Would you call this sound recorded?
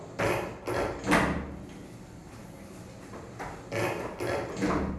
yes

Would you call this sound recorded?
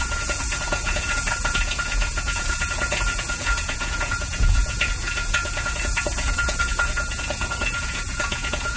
no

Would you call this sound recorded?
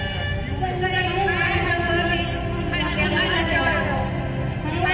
yes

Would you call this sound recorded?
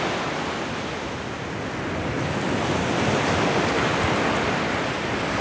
yes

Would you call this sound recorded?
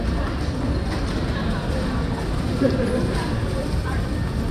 yes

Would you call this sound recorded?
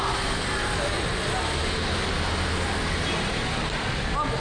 yes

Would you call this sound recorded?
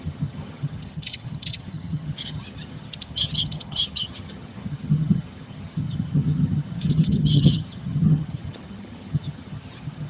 no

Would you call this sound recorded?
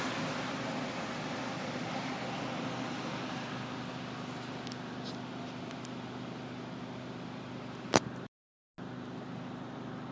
yes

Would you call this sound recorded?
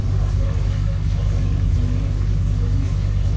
no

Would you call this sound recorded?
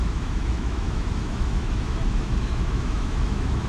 no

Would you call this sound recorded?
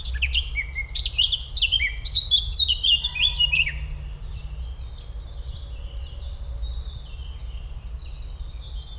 yes